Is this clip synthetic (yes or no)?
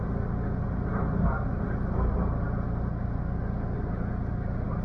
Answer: no